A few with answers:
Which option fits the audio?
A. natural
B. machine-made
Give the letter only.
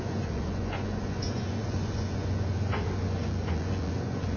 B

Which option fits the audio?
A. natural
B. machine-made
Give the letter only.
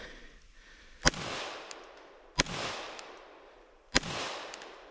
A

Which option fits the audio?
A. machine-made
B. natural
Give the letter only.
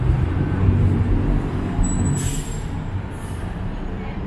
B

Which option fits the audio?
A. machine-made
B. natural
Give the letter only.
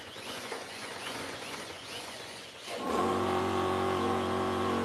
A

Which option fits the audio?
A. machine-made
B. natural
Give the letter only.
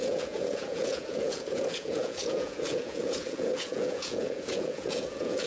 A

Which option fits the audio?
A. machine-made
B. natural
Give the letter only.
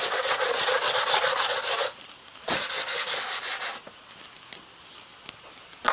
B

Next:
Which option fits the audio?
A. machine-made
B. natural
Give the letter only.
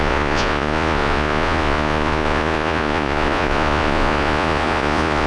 A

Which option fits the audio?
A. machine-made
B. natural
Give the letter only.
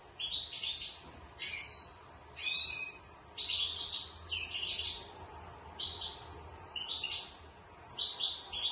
B